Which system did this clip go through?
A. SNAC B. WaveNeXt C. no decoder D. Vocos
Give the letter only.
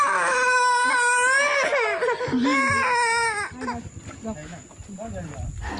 C